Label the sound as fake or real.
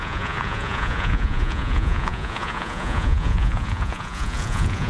fake